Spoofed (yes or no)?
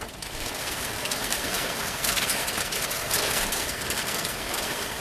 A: yes